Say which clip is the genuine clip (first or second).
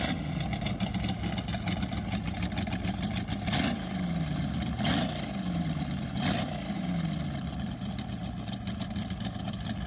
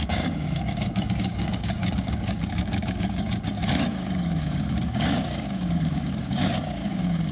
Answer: first